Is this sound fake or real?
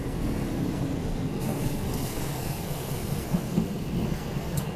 fake